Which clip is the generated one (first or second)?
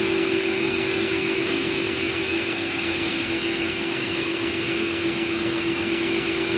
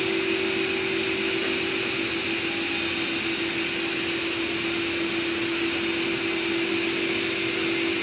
first